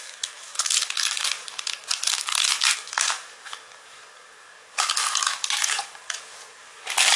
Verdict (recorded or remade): remade